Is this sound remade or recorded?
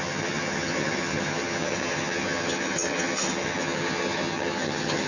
remade